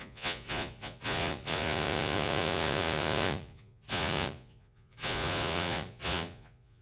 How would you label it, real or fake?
fake